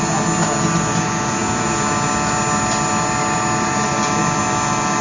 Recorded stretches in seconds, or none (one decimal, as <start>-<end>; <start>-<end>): 0.0-5.0